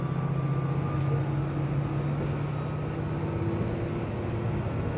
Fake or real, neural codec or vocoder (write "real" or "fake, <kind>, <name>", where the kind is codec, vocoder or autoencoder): real